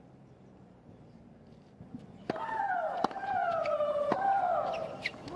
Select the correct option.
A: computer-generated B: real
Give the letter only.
A